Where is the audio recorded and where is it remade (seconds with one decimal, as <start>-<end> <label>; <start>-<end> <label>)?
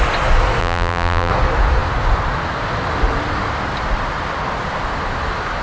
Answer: 0.0-0.6 recorded; 0.6-1.3 remade; 1.3-5.6 recorded